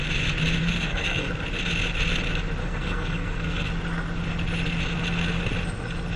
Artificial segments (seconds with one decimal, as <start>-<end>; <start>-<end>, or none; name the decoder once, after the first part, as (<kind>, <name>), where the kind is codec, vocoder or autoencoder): 0.6-1.3 (codec, SNAC); 2.6-3.7

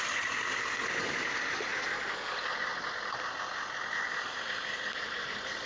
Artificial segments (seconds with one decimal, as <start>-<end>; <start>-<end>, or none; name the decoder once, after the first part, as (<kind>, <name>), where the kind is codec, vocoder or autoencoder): none

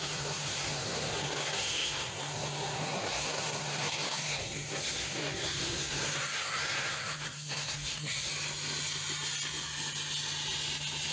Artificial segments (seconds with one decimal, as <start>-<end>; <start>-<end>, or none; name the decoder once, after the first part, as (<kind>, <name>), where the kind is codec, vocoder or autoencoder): 0.0-8.3 (codec, SNAC)

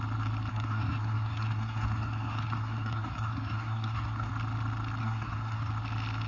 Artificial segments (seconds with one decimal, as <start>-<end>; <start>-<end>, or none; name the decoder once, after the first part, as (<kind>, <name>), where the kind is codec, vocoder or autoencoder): 0.5-4.3 (codec, SNAC); 5.0-5.7

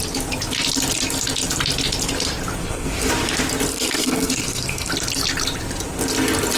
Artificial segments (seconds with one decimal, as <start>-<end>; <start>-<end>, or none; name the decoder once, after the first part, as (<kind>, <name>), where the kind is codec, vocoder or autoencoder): 2.6-3.1 (codec, SNAC); 3.7-4.9

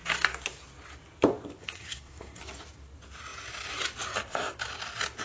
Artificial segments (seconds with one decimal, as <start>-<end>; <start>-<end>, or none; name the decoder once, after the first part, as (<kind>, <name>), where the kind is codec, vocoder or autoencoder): 1.6-2.4 (codec, SNAC)

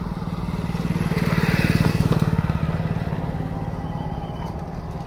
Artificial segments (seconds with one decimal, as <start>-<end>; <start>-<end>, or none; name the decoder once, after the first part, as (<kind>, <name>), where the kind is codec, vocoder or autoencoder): 1.9-2.6 (codec, SNAC)

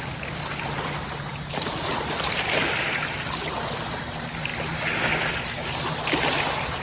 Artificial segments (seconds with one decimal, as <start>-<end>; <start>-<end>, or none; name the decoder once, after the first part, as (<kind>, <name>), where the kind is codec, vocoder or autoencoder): none